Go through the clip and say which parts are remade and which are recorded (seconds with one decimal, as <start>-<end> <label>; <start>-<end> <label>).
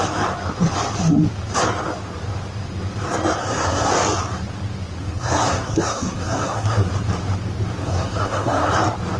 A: 0.0-3.4 recorded; 3.4-3.9 remade; 3.9-5.0 recorded; 5.0-6.9 remade; 6.9-7.8 recorded; 7.8-8.7 remade; 8.7-9.2 recorded